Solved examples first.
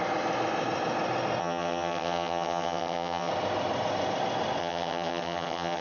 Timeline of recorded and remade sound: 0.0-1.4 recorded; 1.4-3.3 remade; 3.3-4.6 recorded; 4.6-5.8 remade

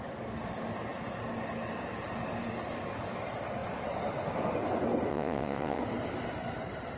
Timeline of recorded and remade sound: 0.0-5.1 recorded; 5.1-5.8 remade; 5.8-7.0 recorded

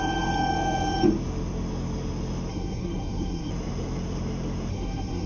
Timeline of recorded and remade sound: 0.0-2.5 recorded; 2.5-3.5 remade; 3.5-4.7 recorded; 4.7-5.3 remade

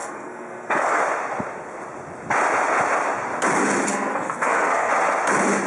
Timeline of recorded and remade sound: 0.0-1.0 remade; 1.0-3.9 recorded; 3.9-4.9 remade; 4.9-5.7 recorded